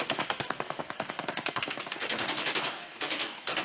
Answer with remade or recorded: remade